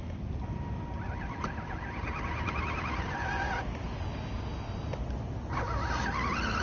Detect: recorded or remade recorded